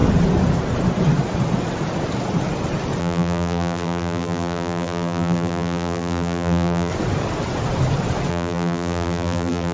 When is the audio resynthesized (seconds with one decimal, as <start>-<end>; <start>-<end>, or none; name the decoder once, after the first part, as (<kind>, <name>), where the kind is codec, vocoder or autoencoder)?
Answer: 3.0-6.9 (vocoder, BigVGAN v2); 8.3-9.7